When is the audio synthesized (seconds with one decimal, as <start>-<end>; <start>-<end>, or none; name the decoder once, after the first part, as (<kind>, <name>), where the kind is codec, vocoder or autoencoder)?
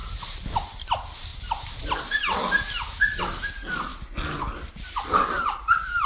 none